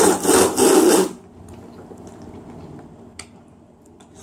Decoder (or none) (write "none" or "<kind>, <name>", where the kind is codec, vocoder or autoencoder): none